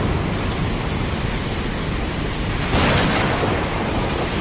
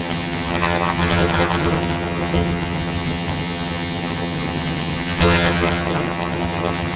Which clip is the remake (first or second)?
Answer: second